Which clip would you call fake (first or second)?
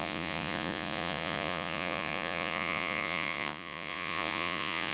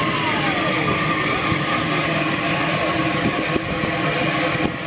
first